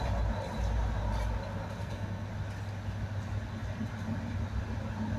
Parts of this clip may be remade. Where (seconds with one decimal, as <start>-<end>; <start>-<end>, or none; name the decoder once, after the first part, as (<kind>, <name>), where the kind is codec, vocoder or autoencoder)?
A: 1.8-2.3 (codec, SNAC)